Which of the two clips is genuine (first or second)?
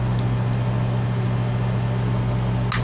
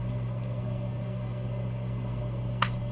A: first